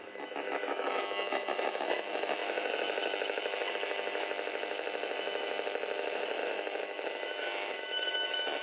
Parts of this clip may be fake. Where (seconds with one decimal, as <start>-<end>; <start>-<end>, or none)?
0.0-8.6